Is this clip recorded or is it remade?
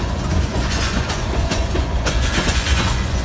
remade